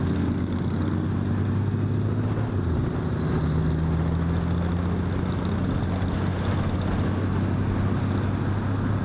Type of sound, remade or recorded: recorded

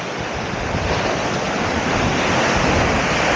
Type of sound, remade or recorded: recorded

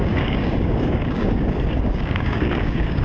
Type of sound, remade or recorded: remade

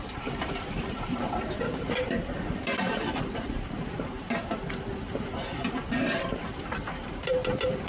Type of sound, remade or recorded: remade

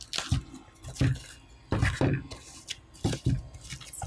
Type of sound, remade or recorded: recorded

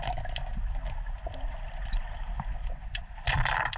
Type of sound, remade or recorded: recorded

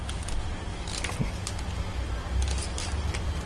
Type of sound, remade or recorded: recorded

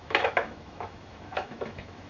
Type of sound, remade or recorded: remade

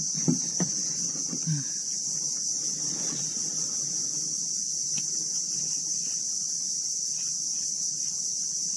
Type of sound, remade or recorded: remade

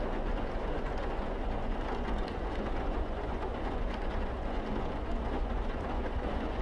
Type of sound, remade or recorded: remade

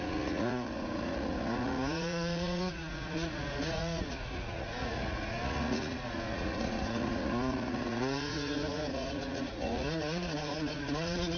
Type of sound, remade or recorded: remade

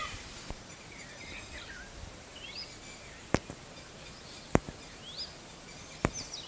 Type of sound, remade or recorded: recorded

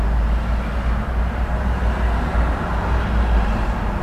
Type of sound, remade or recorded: recorded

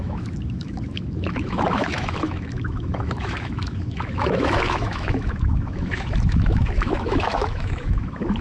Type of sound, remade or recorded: remade